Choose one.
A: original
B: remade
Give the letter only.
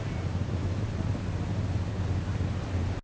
A